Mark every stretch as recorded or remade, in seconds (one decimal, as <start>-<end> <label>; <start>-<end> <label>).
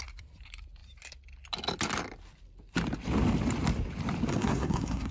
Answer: 0.0-4.3 recorded; 4.3-5.1 remade